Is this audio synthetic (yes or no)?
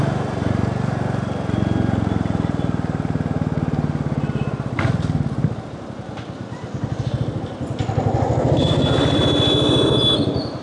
no